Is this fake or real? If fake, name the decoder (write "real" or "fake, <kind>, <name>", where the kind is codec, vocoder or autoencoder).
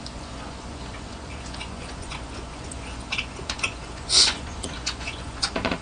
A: fake, vocoder, Vocos